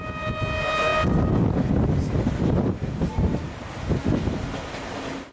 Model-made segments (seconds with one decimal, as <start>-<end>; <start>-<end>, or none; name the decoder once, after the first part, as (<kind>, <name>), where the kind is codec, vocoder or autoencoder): 3.1-3.7 (vocoder, BigVGAN v2)